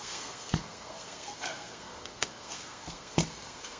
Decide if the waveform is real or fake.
fake